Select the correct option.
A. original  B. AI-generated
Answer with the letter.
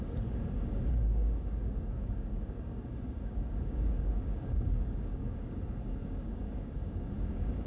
B